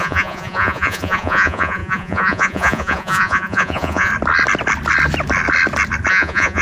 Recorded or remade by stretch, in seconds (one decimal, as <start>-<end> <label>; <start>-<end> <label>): 0.0-4.1 remade; 4.1-6.1 recorded; 6.1-6.6 remade